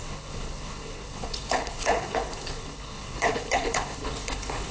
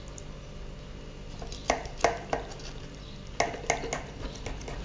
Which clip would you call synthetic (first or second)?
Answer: first